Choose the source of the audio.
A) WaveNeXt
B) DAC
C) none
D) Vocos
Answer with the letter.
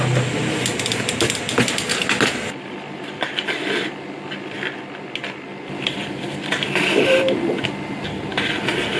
C